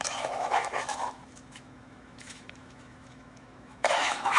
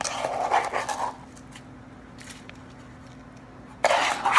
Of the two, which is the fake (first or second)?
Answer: first